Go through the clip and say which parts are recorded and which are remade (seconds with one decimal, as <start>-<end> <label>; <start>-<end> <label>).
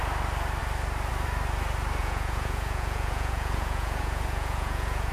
0.0-2.0 recorded; 2.0-5.1 remade